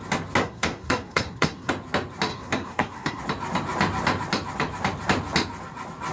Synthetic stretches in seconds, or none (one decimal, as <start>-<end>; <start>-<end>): 0.4-1.7; 2.3-3.2